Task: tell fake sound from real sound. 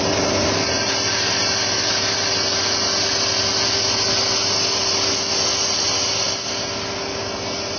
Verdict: real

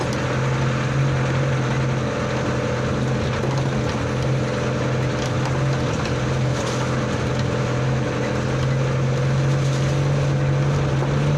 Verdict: real